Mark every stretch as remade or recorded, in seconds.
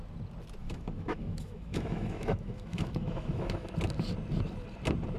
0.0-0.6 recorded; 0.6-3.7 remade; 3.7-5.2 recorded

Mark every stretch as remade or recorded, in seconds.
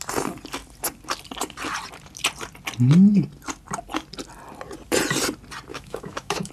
0.0-5.7 recorded; 5.7-6.5 remade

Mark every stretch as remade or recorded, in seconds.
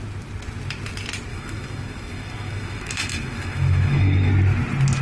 0.0-1.3 recorded; 1.3-4.3 remade; 4.3-5.0 recorded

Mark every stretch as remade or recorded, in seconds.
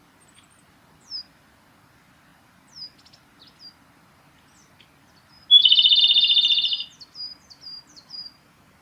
0.0-8.8 recorded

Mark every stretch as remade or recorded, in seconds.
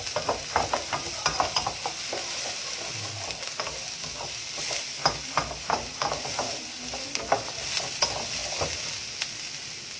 0.0-10.0 recorded